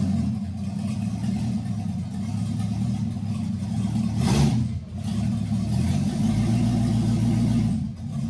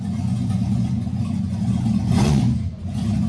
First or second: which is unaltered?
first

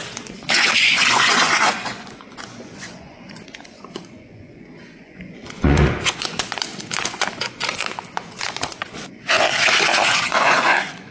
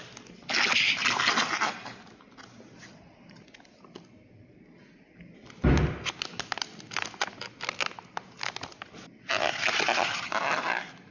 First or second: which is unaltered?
second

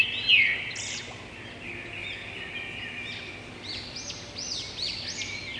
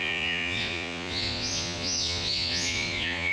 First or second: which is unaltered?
first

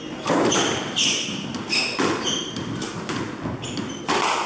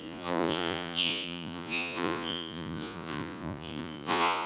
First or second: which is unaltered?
first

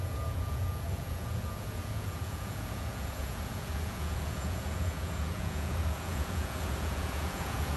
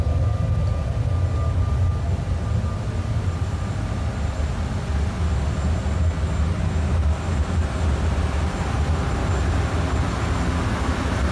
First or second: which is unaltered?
second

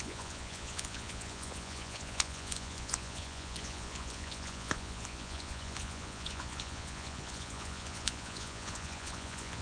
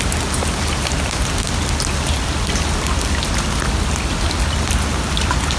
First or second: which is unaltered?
second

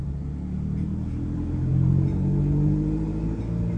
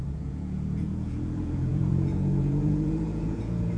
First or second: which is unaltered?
first